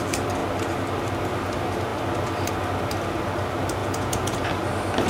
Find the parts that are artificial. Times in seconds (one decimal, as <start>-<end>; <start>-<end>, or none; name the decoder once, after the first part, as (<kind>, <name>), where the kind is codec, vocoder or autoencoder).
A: 3.8-4.4 (vocoder, Vocos)